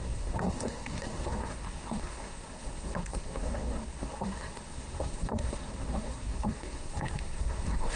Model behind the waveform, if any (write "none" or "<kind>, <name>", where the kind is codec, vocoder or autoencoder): codec, SNAC